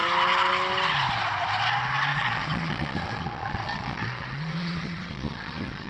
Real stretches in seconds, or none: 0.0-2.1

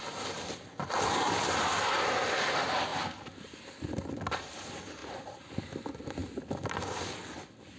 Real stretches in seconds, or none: 0.0-7.8

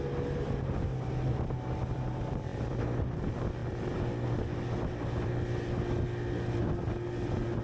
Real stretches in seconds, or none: 0.0-7.6

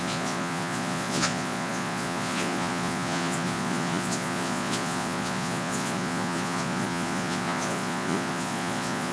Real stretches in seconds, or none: none